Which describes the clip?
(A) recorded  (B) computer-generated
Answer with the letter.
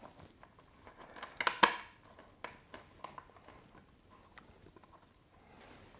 A